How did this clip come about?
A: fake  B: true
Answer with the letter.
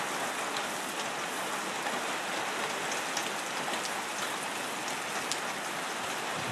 B